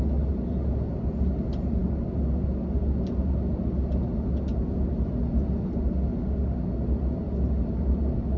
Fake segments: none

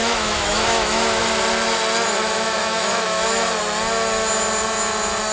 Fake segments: 0.0-1.2; 2.2-3.4